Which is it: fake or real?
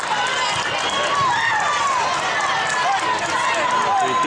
real